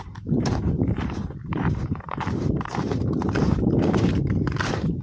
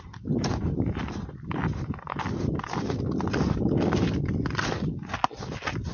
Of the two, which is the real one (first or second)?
second